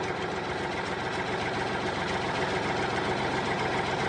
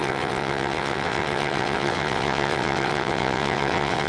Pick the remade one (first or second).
second